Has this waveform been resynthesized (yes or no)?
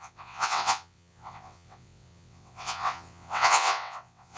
yes